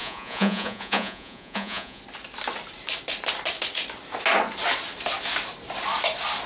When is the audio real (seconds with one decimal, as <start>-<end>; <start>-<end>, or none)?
2.0-6.5